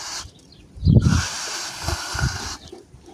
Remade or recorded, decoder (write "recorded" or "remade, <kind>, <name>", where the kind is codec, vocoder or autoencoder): recorded